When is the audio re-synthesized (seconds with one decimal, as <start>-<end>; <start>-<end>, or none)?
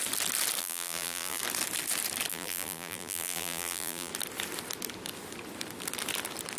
0.6-1.4; 2.3-4.1